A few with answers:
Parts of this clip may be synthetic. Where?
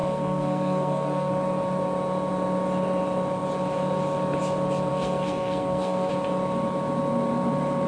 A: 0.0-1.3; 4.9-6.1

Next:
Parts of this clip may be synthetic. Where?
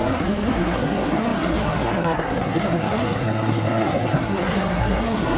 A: 0.0-5.4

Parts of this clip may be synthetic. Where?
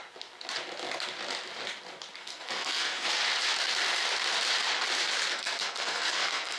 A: 2.2-3.1; 5.3-6.6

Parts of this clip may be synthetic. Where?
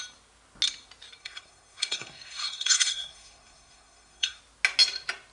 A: 1.2-4.4